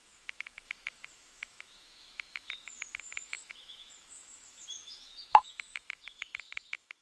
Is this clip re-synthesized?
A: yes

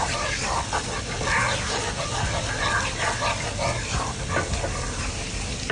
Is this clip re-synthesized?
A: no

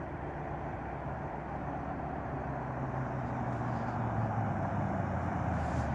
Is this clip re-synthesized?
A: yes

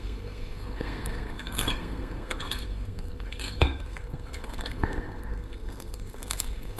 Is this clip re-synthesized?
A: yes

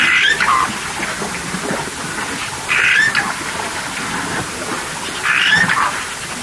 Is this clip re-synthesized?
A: no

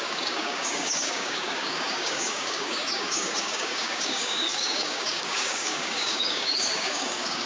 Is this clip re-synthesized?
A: yes